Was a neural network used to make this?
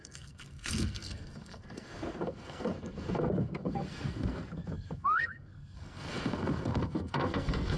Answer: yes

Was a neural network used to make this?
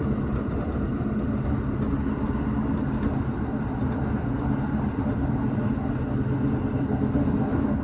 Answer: no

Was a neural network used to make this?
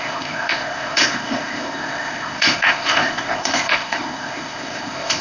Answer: yes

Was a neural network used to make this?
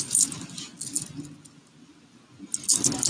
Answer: no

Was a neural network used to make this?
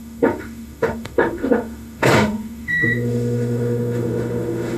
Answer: yes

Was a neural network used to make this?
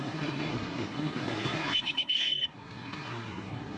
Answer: yes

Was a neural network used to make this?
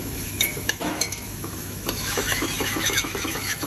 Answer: yes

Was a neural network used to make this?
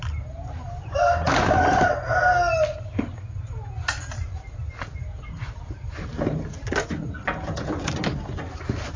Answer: no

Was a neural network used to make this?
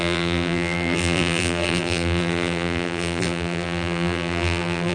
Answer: yes